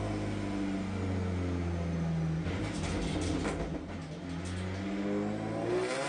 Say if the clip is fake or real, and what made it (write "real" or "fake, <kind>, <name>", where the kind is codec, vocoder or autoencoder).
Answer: real